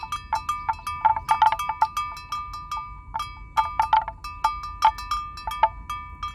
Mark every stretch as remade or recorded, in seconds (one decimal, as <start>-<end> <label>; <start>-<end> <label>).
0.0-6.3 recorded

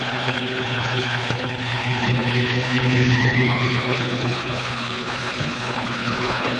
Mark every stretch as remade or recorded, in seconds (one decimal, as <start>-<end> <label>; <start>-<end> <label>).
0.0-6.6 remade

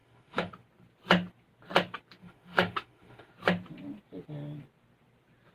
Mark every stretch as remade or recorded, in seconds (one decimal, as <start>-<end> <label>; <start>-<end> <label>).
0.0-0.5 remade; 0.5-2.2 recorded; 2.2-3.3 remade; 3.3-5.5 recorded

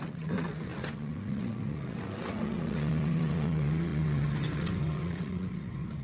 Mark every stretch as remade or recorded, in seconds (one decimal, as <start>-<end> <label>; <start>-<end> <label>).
0.0-6.0 remade

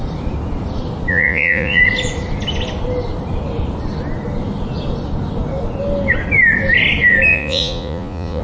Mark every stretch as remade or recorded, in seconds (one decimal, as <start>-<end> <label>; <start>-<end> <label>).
0.0-1.1 recorded; 1.1-1.8 remade; 1.8-7.3 recorded; 7.3-8.4 remade